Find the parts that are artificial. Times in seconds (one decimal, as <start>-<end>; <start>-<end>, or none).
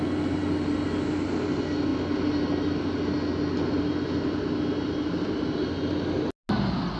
none